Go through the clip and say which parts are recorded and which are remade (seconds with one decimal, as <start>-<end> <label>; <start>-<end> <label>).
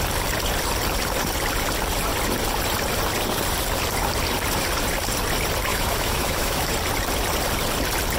0.0-5.7 recorded; 5.7-6.7 remade; 6.7-8.2 recorded